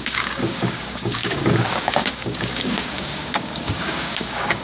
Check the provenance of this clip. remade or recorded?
remade